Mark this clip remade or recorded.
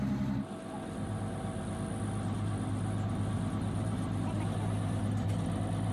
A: recorded